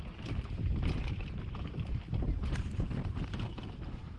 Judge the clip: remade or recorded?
remade